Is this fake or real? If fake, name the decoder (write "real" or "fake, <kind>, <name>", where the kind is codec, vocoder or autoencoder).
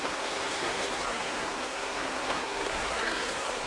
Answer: fake, codec, SNAC